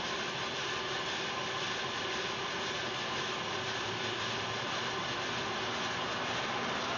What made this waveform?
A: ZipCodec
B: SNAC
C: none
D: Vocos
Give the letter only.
C